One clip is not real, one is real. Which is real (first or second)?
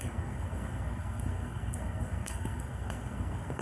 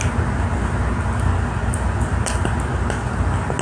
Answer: second